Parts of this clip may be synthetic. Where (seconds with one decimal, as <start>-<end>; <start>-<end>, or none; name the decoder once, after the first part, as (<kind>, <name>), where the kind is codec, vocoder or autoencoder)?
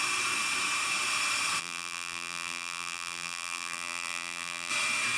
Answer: 1.6-4.7 (vocoder, BigVGAN v2)